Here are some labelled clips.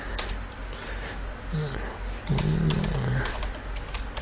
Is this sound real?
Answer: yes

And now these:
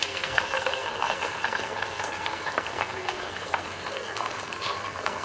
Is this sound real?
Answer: no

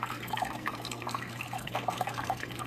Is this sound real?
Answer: no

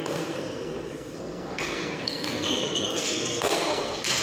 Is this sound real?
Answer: no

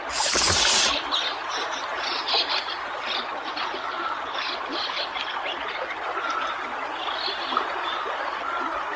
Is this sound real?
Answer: yes